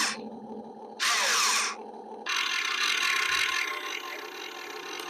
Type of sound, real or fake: real